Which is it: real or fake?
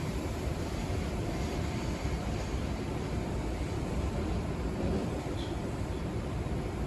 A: fake